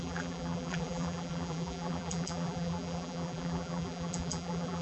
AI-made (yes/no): yes